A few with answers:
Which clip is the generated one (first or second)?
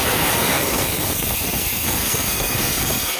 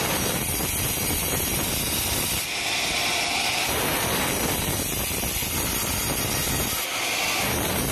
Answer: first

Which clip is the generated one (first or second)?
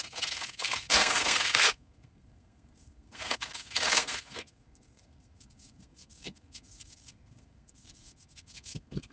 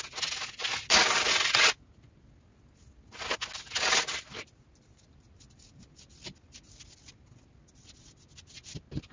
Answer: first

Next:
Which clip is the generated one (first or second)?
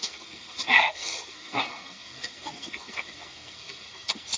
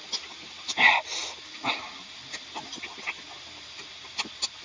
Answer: first